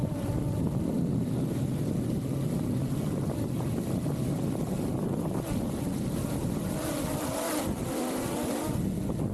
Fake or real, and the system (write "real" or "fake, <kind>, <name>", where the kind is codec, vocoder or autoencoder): real